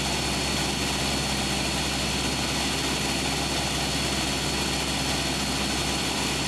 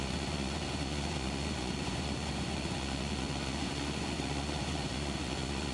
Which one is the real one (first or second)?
first